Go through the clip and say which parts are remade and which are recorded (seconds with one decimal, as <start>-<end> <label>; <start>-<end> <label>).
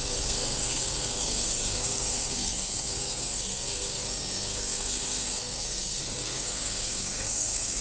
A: 0.0-7.8 remade